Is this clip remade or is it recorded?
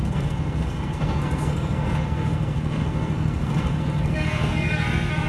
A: remade